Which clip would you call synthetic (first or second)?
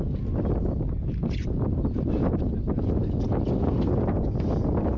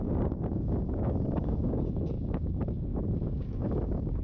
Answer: second